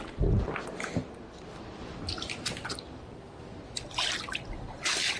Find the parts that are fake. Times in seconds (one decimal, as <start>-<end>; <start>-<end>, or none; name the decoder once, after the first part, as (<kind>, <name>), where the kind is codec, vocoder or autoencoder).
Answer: none